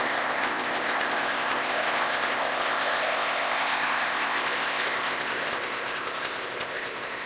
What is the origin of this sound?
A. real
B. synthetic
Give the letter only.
B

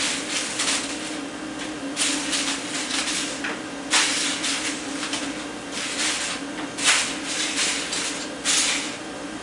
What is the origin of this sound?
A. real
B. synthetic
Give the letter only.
A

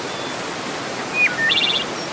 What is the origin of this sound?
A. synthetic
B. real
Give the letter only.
B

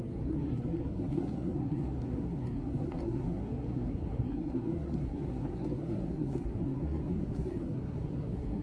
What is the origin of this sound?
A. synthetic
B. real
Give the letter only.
A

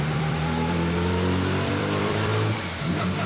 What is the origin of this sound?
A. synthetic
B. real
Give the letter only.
A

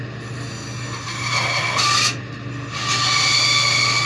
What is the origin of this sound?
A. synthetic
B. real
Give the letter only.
B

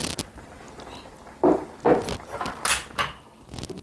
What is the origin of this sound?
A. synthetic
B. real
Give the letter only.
B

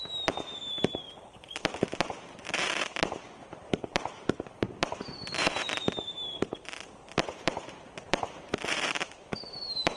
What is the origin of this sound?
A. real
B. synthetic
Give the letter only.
B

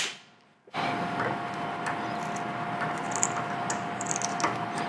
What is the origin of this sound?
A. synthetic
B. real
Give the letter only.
B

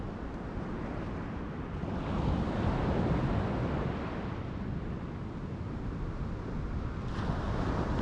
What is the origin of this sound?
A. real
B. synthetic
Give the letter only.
A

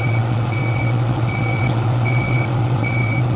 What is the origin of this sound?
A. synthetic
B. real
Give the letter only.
A